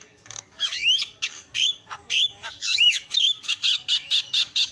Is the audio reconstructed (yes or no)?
yes